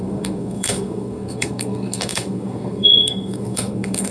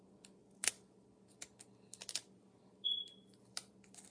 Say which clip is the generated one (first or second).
first